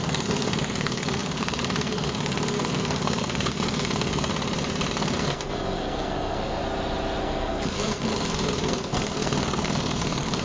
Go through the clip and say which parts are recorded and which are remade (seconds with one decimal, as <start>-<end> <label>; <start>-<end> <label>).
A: 0.0-4.3 remade; 4.3-4.9 recorded; 4.9-6.6 remade; 6.6-7.2 recorded; 7.2-10.4 remade